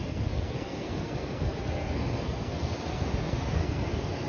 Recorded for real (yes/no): no